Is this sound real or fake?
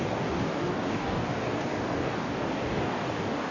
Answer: fake